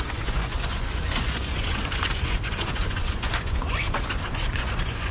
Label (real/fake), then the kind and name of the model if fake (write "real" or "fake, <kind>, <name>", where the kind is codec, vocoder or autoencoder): fake, vocoder, Vocos